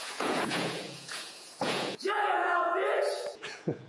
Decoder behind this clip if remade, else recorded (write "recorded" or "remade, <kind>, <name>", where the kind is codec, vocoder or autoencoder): remade, vocoder, Vocos